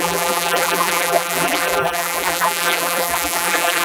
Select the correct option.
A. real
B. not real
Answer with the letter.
B